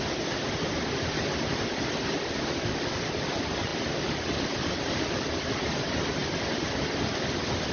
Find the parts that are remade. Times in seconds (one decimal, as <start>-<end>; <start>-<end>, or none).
none